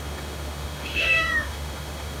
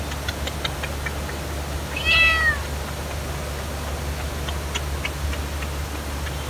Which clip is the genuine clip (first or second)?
second